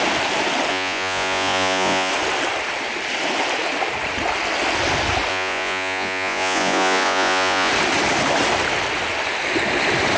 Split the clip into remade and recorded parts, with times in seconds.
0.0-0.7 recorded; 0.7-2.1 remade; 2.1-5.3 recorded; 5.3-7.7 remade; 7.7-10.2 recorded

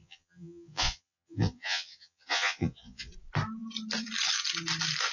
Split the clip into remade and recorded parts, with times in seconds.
0.0-3.1 remade; 3.1-5.1 recorded